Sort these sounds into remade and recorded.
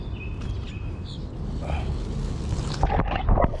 recorded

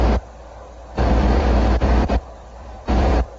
remade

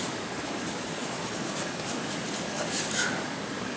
remade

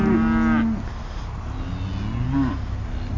recorded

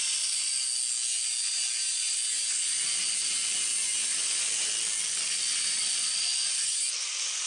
recorded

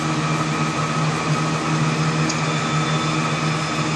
recorded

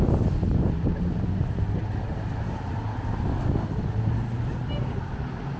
recorded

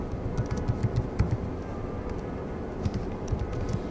recorded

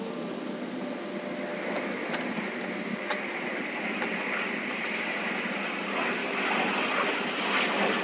recorded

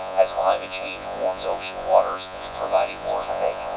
remade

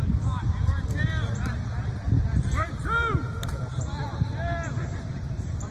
remade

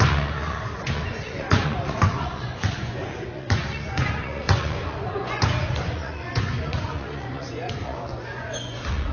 remade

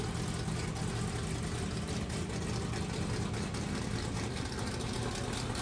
recorded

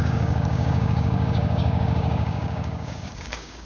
remade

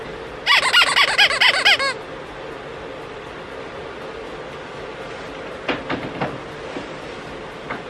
recorded